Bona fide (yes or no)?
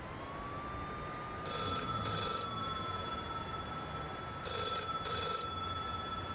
yes